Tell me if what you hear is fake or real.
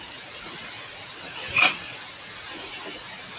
fake